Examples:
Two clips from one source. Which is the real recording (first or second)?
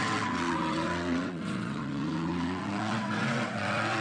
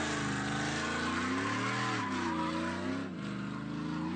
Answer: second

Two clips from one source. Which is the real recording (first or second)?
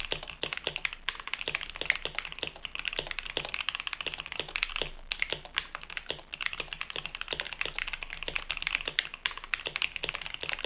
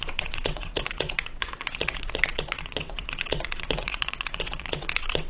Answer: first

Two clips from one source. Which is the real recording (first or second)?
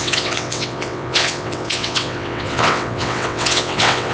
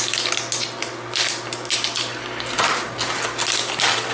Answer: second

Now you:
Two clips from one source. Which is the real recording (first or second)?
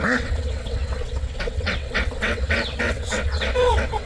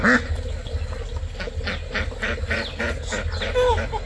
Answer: second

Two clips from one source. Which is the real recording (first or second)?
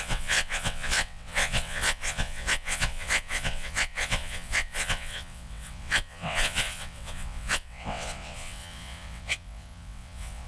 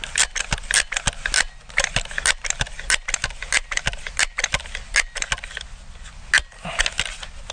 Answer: second